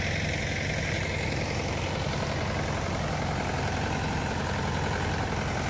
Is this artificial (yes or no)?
no